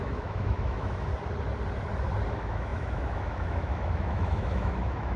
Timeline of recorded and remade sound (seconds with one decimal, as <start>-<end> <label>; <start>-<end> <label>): 0.0-1.1 remade; 1.1-2.3 recorded; 2.3-5.2 remade